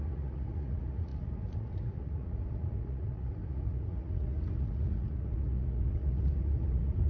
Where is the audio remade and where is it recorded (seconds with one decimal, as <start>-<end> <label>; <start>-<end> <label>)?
0.0-7.1 remade